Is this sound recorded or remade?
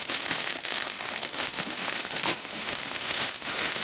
remade